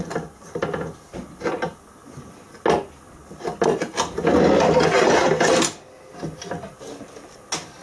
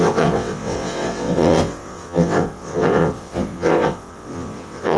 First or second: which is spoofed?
second